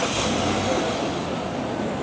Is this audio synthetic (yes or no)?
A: no